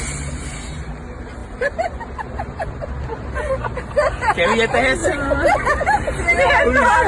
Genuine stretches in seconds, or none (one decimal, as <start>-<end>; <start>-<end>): 0.0-5.0; 6.4-7.1